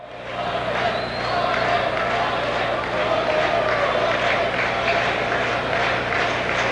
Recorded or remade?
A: recorded